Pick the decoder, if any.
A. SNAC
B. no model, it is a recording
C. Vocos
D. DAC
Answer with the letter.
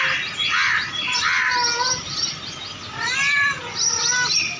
B